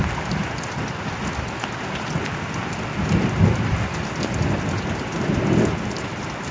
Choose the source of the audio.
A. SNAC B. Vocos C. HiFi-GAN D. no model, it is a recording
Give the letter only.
D